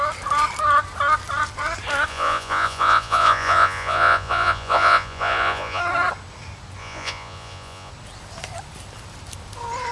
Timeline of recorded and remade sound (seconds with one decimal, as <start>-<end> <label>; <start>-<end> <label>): 0.0-2.1 recorded; 2.1-5.8 remade; 5.8-6.8 recorded; 6.8-7.9 remade; 7.9-9.9 recorded

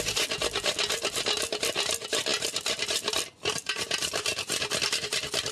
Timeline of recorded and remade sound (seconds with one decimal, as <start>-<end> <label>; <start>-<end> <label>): 0.0-5.5 remade

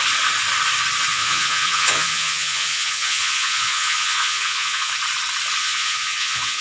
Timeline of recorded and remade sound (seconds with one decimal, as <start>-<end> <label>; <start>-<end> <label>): 0.0-1.1 recorded; 1.1-4.9 remade; 4.9-5.6 recorded; 5.6-6.6 remade

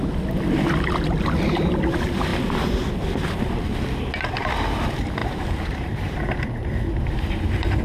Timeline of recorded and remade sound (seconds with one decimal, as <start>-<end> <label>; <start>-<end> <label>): 0.0-5.2 recorded; 5.2-7.8 remade

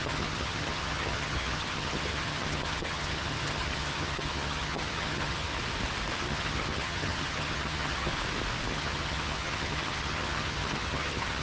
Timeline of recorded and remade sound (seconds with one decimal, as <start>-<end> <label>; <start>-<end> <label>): 0.0-5.5 remade; 5.5-6.2 recorded; 6.2-8.1 remade; 8.1-8.7 recorded; 8.7-11.4 remade